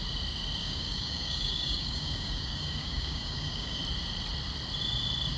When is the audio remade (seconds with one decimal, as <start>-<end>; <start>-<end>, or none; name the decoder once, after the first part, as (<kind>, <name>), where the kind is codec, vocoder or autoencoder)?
0.6-3.8 (codec, DAC)